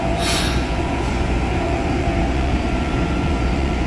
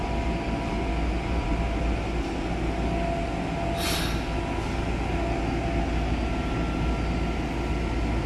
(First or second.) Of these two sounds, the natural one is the second